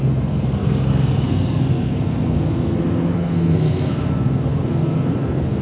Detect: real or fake fake